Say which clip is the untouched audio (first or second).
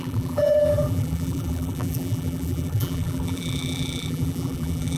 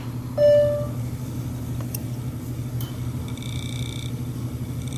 second